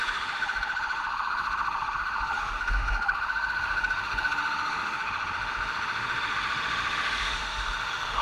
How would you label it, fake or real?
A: fake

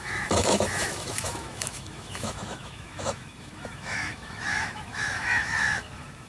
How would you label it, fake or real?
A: fake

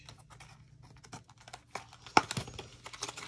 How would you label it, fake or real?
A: real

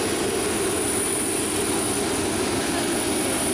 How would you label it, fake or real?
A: real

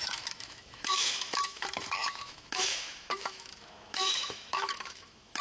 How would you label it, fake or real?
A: fake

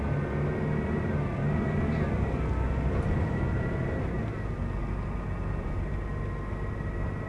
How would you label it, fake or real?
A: real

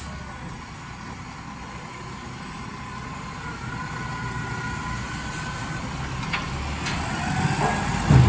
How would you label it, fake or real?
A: real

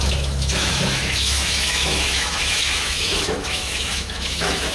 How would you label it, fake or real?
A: fake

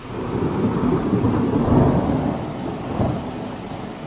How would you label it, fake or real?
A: real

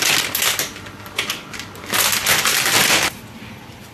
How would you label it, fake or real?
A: real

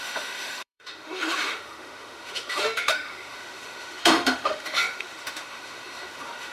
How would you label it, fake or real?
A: fake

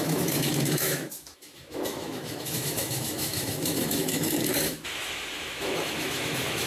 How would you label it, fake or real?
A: fake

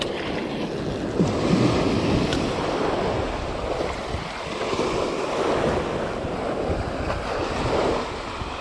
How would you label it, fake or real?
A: real